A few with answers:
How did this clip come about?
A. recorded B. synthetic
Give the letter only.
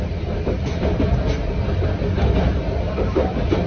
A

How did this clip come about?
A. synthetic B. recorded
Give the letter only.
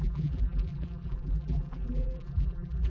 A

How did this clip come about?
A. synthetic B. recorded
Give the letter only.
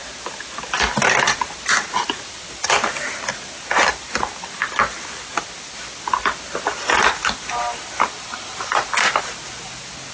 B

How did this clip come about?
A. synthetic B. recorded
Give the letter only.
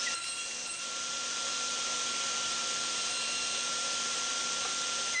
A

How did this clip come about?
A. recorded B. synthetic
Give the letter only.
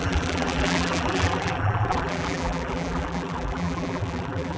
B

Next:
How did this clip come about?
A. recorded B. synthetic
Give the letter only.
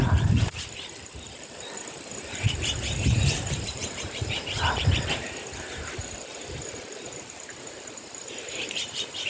B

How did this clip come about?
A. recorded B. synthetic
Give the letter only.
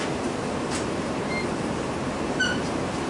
B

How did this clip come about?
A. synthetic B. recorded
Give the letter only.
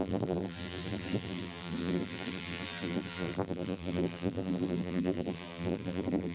A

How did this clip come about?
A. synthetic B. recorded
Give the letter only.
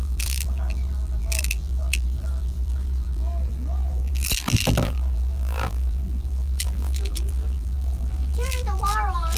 A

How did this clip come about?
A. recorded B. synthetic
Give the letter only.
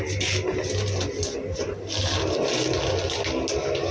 A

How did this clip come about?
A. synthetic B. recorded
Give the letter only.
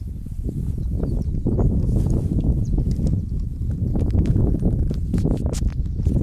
A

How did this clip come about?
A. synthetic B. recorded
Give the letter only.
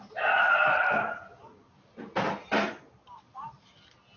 B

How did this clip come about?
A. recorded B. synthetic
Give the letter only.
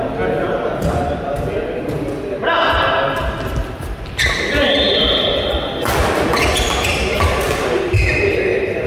A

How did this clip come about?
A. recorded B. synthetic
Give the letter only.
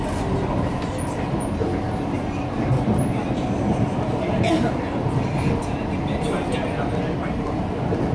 A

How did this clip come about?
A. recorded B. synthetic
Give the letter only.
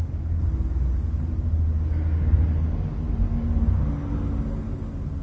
A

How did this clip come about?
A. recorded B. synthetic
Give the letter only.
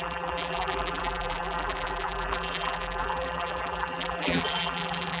B